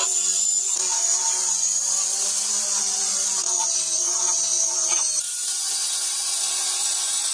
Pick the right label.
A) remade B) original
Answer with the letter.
A